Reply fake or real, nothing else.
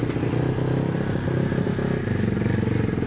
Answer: real